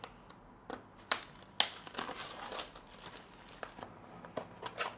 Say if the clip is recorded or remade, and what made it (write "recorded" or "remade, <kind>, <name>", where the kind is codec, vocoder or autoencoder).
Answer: recorded